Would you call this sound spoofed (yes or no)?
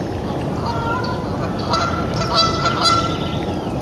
no